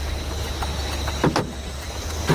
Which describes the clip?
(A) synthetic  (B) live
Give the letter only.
B